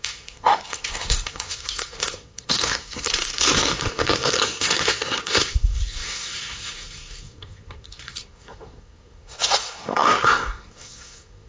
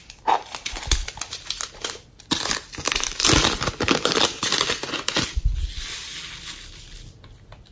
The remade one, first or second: first